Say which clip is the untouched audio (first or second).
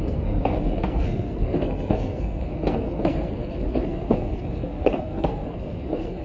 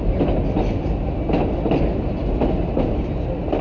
second